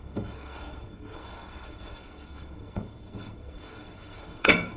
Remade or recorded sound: remade